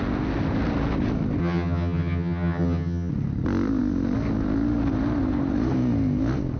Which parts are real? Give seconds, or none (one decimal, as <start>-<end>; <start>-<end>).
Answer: 0.0-1.4; 3.1-6.6